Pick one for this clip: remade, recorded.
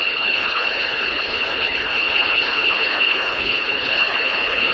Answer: remade